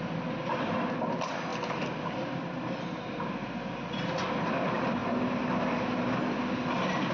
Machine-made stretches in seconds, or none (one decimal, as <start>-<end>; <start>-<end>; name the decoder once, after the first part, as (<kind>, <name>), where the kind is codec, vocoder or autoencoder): none